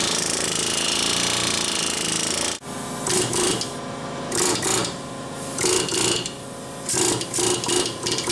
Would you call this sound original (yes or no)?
yes